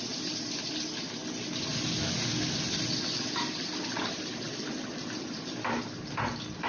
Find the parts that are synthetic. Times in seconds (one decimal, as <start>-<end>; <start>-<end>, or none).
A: none